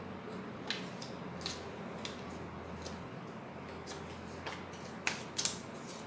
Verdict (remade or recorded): recorded